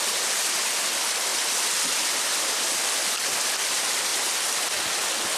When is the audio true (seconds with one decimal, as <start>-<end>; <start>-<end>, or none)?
0.0-5.4